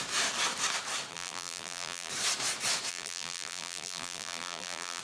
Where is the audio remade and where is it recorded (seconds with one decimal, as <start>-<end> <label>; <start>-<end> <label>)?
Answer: 0.0-1.1 recorded; 1.1-2.1 remade; 2.1-2.9 recorded; 2.9-5.0 remade